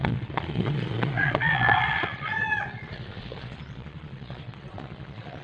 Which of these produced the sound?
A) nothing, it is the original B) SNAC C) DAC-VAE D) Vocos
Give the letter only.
D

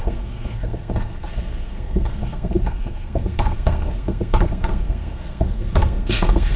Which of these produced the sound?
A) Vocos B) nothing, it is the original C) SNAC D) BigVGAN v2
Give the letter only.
C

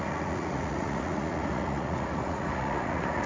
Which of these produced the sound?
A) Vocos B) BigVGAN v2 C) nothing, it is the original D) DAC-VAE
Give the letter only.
A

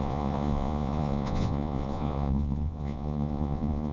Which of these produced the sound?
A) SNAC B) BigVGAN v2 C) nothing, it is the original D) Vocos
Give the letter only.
D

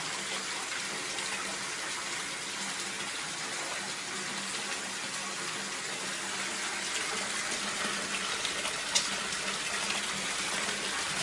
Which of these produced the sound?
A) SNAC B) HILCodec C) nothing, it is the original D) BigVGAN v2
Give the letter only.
C